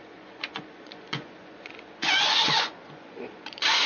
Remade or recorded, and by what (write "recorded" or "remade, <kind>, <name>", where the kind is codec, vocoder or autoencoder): remade, vocoder, Vocos